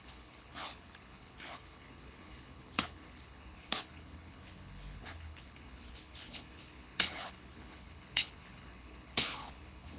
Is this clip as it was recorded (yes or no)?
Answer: no